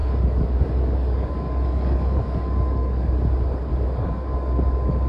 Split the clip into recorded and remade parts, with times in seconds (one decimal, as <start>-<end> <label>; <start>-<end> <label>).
0.0-3.1 remade; 3.1-3.7 recorded; 3.7-5.1 remade